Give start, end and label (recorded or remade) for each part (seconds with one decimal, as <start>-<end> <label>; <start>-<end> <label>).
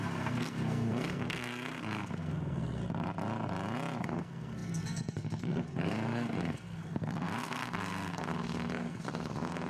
0.0-2.8 remade; 2.8-4.0 recorded; 4.0-9.7 remade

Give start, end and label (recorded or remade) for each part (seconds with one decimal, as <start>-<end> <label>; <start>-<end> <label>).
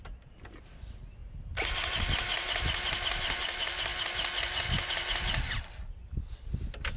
0.0-7.0 recorded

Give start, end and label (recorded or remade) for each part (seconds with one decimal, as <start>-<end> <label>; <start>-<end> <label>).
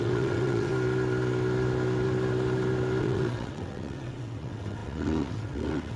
0.0-0.7 remade; 0.7-3.0 recorded; 3.0-6.0 remade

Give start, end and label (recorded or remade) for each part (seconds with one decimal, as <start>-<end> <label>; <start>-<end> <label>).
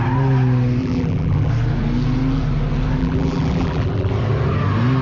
0.0-0.8 recorded; 0.8-1.5 remade; 1.5-3.0 recorded; 3.0-4.1 remade; 4.1-5.0 recorded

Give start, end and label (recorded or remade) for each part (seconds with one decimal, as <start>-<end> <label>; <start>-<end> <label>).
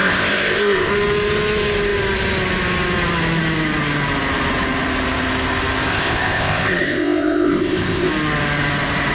0.0-0.9 remade; 0.9-5.9 recorded; 5.9-8.1 remade; 8.1-9.1 recorded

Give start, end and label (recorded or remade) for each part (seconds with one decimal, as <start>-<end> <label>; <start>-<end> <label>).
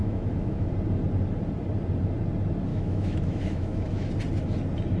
0.0-0.7 remade; 0.7-2.7 recorded; 2.7-4.1 remade; 4.1-5.0 recorded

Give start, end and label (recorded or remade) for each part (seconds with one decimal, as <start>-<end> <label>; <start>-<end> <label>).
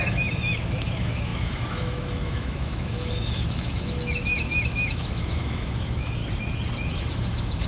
0.0-6.2 remade; 6.2-6.9 recorded; 6.9-7.7 remade